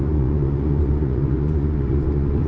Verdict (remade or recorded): remade